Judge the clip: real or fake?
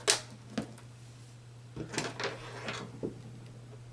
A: real